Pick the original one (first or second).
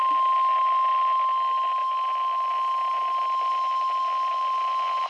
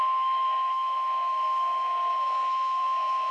first